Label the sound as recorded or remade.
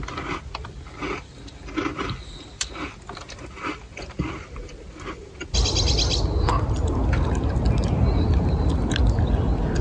recorded